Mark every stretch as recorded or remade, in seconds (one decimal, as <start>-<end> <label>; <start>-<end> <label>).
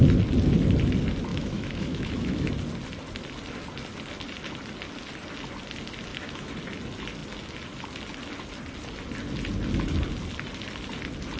0.0-1.3 recorded; 1.3-2.5 remade; 2.5-6.1 recorded; 6.1-6.6 remade; 6.6-11.4 recorded